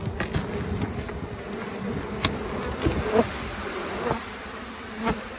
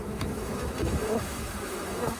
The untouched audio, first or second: first